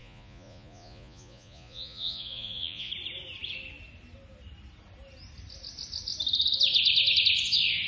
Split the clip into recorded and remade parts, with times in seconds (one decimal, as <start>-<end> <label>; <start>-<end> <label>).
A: 0.0-2.9 remade; 2.9-7.9 recorded